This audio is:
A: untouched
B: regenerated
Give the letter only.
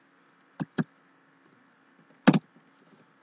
A